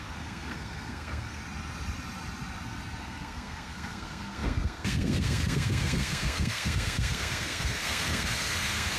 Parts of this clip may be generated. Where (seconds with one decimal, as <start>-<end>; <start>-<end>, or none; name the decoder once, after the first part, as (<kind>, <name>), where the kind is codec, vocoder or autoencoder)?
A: 0.0-1.4 (codec, SNAC); 3.0-9.0